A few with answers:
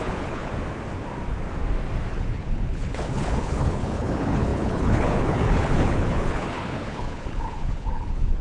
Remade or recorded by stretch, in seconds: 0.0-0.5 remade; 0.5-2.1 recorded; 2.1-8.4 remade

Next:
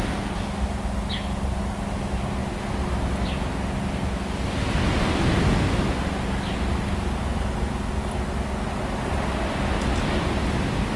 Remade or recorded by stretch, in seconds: 0.0-11.0 recorded

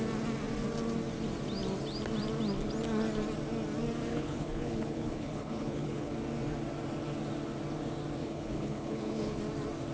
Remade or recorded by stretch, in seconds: 0.0-4.1 recorded; 4.1-6.1 remade; 6.1-8.2 recorded; 8.2-9.4 remade; 9.4-9.9 recorded

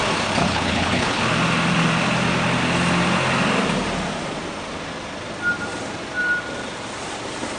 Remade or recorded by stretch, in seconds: 0.0-0.4 recorded; 0.4-1.2 remade; 1.2-7.6 recorded

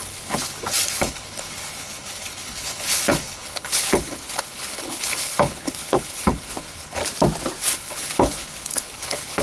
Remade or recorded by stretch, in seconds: 0.0-7.0 remade; 7.0-7.6 recorded; 7.6-9.4 remade

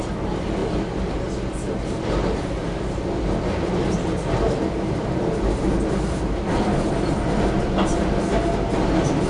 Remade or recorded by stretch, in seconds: 0.0-9.3 recorded